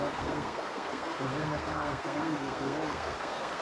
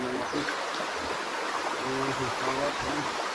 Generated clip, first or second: first